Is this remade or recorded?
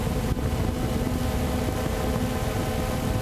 recorded